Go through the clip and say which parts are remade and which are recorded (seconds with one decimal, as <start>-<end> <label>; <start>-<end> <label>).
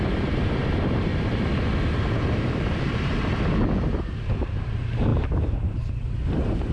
0.0-1.1 remade; 1.1-2.0 recorded; 2.0-3.1 remade; 3.1-4.1 recorded; 4.1-6.7 remade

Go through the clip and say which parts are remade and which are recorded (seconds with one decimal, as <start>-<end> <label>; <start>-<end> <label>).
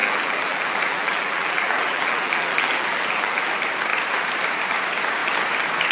0.0-3.5 remade; 3.5-5.9 recorded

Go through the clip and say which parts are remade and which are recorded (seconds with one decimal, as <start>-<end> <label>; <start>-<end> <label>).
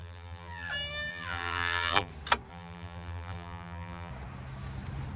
0.0-0.7 remade; 0.7-1.1 recorded; 1.1-2.1 remade; 2.1-2.5 recorded; 2.5-4.1 remade; 4.1-5.2 recorded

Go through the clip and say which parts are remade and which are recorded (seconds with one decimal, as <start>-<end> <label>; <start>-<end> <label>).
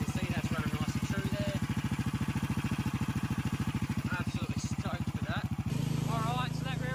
0.0-2.9 recorded; 2.9-5.8 remade; 5.8-6.9 recorded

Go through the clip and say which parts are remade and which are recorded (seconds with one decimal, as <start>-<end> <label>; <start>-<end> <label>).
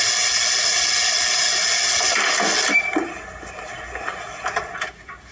0.0-5.3 recorded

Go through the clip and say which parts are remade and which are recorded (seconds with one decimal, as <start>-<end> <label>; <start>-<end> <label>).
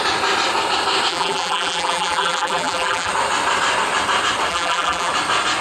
0.0-1.1 recorded; 1.1-3.1 remade; 3.1-4.5 recorded; 4.5-5.1 remade; 5.1-5.6 recorded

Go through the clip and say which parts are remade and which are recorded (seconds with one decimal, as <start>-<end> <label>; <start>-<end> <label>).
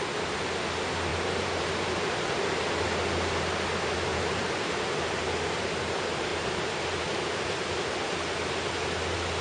0.0-1.1 recorded; 1.1-2.1 remade; 2.1-4.1 recorded; 4.1-5.1 remade; 5.1-6.3 recorded; 6.3-7.5 remade; 7.5-9.4 recorded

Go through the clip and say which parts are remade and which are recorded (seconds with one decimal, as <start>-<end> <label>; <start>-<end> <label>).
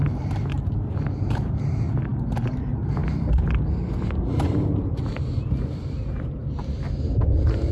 0.0-3.0 remade; 3.0-5.0 recorded; 5.0-7.7 remade